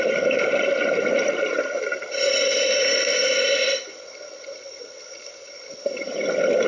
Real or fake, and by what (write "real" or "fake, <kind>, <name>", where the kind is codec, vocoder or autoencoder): real